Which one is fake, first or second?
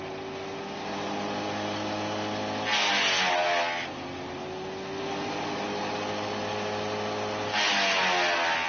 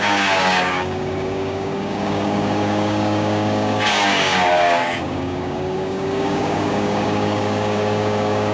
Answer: second